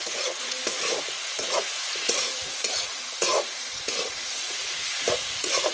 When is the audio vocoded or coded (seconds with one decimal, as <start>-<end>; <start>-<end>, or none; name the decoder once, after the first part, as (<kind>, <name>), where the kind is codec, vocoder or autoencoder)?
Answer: 0.0-0.6 (vocoder, Vocos); 1.3-5.7